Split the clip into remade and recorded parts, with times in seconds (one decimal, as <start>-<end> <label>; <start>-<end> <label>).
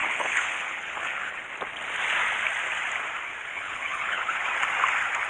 0.0-1.4 remade; 1.4-3.5 recorded; 3.5-4.4 remade; 4.4-5.3 recorded